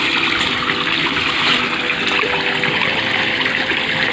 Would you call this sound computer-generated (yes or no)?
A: no